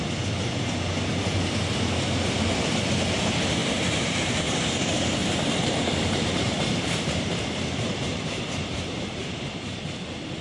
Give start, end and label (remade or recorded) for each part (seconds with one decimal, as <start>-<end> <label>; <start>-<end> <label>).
0.0-3.6 recorded; 3.6-4.4 remade; 4.4-5.2 recorded; 5.2-9.9 remade; 9.9-10.4 recorded